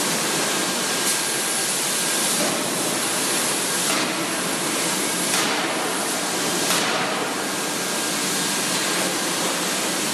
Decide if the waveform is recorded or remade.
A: recorded